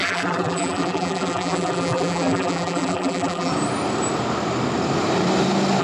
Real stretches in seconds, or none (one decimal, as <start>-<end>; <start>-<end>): 3.5-5.8